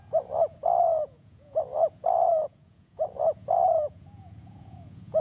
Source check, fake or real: fake